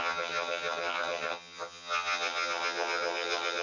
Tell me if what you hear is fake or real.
fake